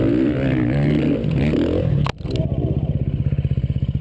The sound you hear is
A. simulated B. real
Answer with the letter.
B